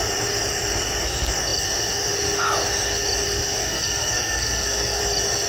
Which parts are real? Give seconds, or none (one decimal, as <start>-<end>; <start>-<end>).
0.0-3.6; 5.0-5.5